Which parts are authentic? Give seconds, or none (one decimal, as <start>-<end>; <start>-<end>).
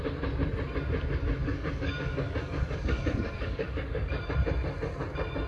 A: 0.0-1.4; 4.3-5.5